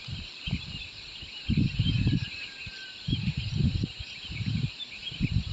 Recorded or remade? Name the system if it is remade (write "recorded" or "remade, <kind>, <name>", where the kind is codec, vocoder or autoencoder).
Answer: remade, vocoder, BigVGAN v2